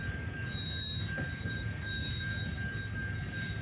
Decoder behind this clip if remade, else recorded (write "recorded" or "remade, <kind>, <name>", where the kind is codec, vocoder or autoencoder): remade, codec, DAC